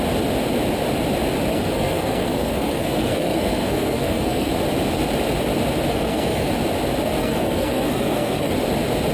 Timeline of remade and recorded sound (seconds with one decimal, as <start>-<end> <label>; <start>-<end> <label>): 0.0-1.5 recorded; 1.5-4.5 remade; 4.5-5.9 recorded; 5.9-6.5 remade; 6.5-7.2 recorded; 7.2-8.5 remade; 8.5-9.1 recorded